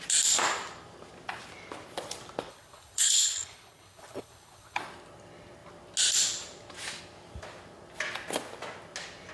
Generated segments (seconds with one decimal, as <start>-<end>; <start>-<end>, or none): 2.5-4.8